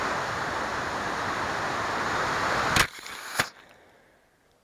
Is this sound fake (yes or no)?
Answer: no